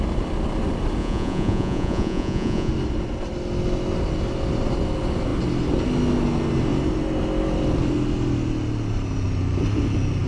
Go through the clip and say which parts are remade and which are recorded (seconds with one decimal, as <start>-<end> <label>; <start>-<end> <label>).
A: 0.0-1.0 recorded; 1.0-2.7 remade; 2.7-10.3 recorded